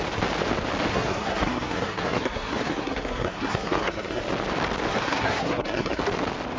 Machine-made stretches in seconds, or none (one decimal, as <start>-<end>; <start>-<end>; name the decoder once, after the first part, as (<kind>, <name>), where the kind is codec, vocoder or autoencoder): 0.9-4.2 (codec, SNAC); 4.9-6.0